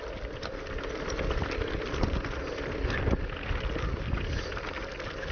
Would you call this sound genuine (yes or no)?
yes